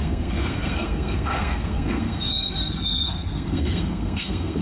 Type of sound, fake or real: fake